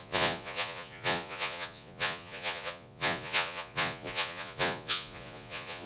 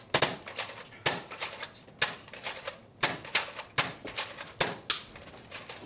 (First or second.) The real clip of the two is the second